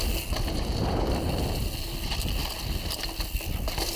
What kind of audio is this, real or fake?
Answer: real